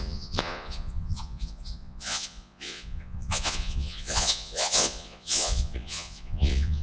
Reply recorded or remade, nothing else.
remade